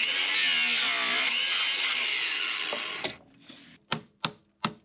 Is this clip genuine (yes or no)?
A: yes